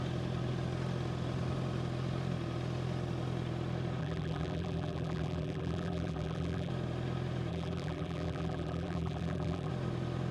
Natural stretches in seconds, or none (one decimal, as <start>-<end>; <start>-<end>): 0.0-4.0; 6.7-7.5; 9.7-10.3